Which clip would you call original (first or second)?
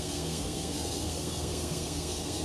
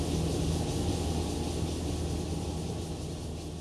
second